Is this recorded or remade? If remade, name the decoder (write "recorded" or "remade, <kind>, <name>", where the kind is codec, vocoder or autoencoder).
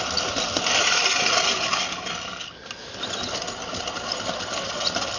recorded